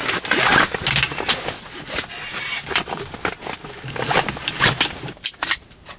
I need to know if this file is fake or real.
real